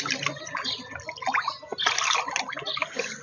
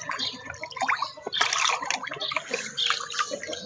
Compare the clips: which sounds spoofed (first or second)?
second